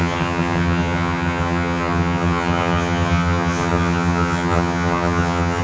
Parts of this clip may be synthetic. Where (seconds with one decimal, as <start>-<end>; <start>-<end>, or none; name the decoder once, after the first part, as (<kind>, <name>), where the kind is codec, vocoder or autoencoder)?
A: 0.0-5.6 (vocoder, HiFi-GAN)